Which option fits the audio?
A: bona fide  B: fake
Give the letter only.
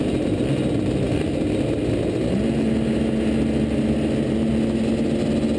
A